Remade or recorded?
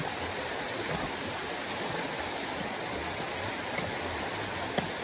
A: recorded